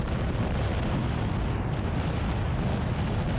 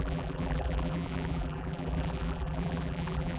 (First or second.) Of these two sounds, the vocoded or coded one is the second